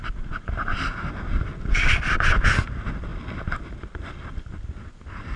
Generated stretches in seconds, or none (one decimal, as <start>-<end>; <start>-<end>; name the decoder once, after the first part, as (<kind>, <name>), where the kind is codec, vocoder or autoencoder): none